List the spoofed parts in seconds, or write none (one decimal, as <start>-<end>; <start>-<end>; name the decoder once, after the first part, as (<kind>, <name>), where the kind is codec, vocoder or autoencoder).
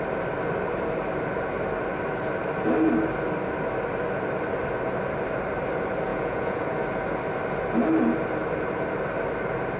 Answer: 6.1-6.8 (vocoder, Vocos)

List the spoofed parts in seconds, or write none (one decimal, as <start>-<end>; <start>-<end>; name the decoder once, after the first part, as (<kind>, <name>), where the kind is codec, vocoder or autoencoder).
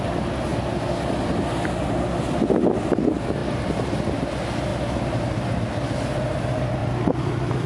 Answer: 4.7-5.2 (vocoder, BigVGAN v2); 6.8-7.3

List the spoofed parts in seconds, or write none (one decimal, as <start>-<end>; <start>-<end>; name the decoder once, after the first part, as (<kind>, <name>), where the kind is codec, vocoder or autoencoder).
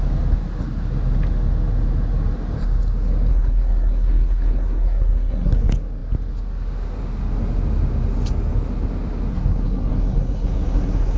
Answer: 3.3-5.5 (codec, SNAC); 9.3-11.2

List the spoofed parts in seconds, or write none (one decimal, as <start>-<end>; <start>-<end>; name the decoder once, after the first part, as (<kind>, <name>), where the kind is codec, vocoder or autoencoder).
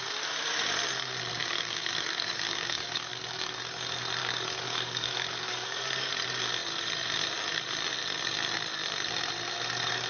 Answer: 1.4-3.6 (codec, DAC); 4.2-6.1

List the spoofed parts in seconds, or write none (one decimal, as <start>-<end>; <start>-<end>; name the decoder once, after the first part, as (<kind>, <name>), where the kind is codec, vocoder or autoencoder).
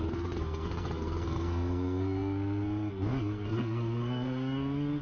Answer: 0.0-5.0 (codec, SNAC)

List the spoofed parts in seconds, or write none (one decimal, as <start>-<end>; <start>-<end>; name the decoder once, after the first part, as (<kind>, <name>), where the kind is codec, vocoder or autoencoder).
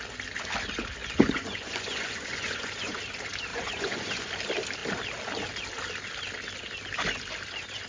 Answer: 1.0-3.0 (vocoder, Vocos); 3.5-4.3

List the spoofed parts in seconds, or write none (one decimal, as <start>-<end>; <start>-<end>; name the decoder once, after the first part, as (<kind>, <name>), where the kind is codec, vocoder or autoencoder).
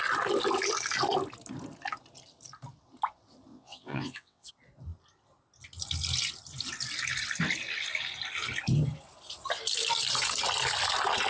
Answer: 3.5-4.5 (vocoder, WaveNeXt)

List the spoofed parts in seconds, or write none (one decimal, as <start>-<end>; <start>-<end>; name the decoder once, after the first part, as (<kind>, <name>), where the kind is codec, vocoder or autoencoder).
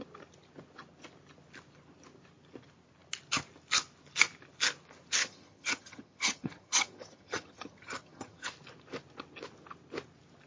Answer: 5.2-8.5 (vocoder, HiFi-GAN)